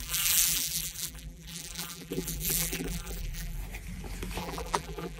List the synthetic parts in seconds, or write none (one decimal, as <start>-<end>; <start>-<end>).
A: 0.0-3.6; 4.4-5.2